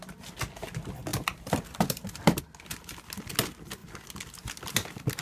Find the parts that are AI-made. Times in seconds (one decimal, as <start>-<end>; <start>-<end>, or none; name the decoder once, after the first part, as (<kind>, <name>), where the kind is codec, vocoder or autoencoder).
1.1-2.4 (vocoder, BigVGAN v2)